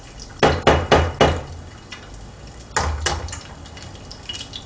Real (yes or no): yes